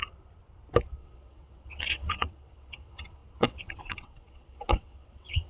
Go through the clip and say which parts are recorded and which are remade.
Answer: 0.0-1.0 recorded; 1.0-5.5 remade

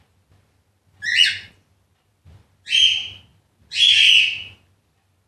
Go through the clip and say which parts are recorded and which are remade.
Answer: 0.0-5.3 recorded

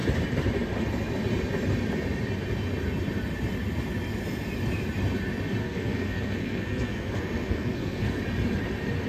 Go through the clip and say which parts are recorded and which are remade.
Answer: 0.0-5.6 recorded; 5.6-8.2 remade; 8.2-9.1 recorded

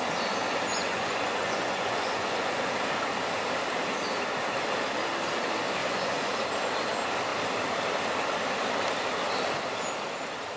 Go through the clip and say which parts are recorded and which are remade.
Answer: 0.0-0.7 recorded; 0.7-2.7 remade; 2.7-5.8 recorded; 5.8-6.3 remade; 6.3-10.6 recorded

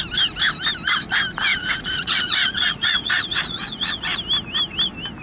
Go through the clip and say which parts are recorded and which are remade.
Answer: 0.0-1.5 recorded; 1.5-4.0 remade; 4.0-5.2 recorded

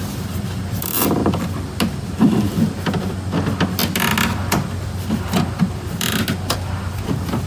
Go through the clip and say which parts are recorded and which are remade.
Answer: 0.0-1.2 remade; 1.2-4.3 recorded; 4.3-7.5 remade

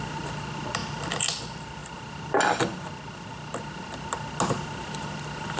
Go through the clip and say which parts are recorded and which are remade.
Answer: 0.0-5.6 recorded

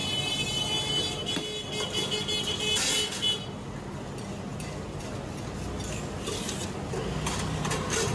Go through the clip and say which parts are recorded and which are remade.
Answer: 0.0-4.5 recorded; 4.5-5.0 remade; 5.0-8.1 recorded